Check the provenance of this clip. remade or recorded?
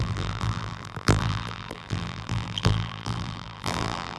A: remade